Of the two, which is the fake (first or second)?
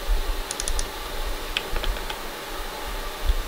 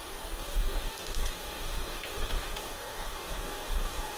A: second